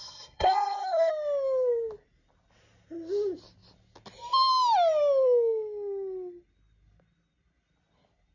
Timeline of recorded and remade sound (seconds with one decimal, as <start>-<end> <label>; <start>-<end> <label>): 0.0-1.1 remade; 1.1-8.3 recorded